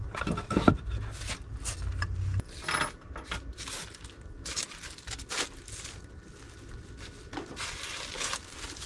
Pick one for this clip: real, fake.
real